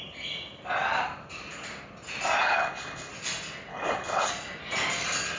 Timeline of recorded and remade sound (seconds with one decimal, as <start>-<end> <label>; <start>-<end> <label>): 0.0-2.4 recorded; 2.4-3.1 remade; 3.1-3.7 recorded; 3.7-4.3 remade; 4.3-5.4 recorded